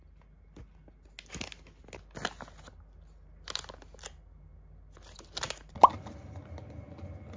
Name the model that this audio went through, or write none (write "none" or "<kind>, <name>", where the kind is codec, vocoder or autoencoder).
none